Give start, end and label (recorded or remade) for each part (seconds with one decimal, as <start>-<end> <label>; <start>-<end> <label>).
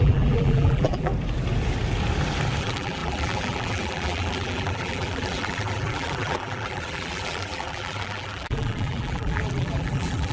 0.0-1.1 remade; 1.1-2.6 recorded; 2.6-10.3 remade